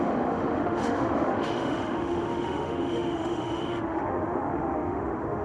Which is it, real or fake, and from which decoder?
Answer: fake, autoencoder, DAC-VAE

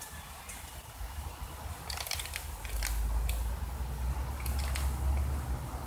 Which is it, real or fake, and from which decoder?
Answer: real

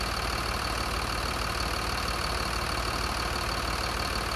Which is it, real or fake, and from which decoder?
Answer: real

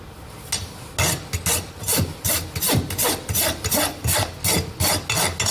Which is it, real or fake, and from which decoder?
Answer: real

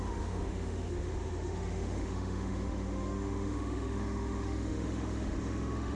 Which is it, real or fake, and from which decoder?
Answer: fake, autoencoder, DAC-VAE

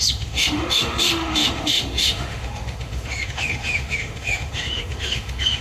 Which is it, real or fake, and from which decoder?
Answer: fake, autoencoder, DAC-VAE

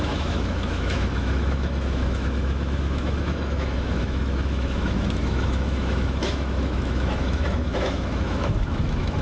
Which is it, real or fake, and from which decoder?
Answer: fake, autoencoder, DAC-VAE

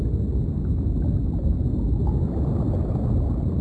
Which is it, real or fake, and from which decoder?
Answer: real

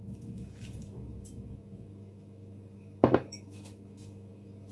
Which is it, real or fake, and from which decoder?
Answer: fake, autoencoder, DAC-VAE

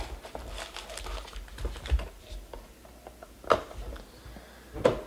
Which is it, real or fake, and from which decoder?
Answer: real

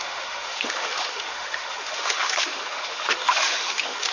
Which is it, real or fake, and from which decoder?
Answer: fake, autoencoder, DAC-VAE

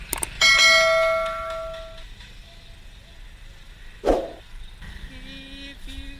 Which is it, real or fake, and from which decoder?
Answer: real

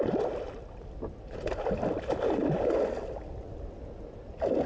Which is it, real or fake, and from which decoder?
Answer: real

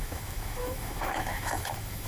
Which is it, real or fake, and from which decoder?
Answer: fake, autoencoder, DAC-VAE